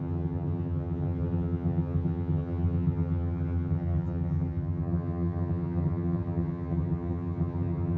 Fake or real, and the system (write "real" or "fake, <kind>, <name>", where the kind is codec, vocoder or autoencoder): fake, vocoder, HiFi-GAN